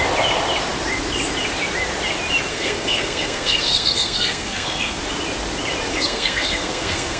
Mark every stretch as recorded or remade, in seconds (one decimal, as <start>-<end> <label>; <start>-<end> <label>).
0.0-2.5 recorded; 2.5-5.0 remade; 5.0-5.9 recorded; 5.9-7.2 remade